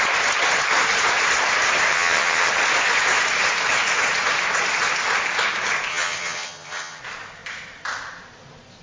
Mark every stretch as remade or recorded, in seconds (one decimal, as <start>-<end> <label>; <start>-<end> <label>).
0.0-1.9 recorded; 1.9-2.5 remade; 2.5-5.9 recorded; 5.9-7.0 remade; 7.0-8.8 recorded